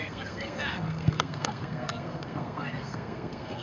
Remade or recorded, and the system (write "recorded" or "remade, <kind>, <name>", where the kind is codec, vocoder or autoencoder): remade, codec, SNAC